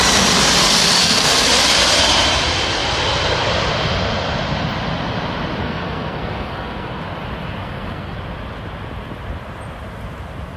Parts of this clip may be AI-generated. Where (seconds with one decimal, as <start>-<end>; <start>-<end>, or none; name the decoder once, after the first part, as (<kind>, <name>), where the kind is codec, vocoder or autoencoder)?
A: 1.0-1.5 (codec, SNAC); 5.6-7.0; 7.6-8.2